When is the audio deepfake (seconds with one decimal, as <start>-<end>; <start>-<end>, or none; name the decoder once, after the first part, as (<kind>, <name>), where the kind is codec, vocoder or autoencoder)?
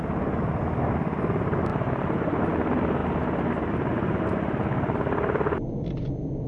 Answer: 1.7-2.4 (vocoder, BigVGAN v2)